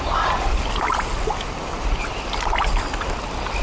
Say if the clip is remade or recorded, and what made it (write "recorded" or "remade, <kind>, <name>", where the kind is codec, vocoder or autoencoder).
remade, vocoder, BigVGAN v2